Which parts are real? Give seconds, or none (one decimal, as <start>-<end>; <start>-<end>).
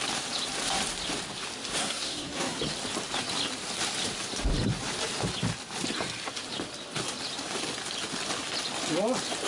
0.0-1.8; 2.6-9.5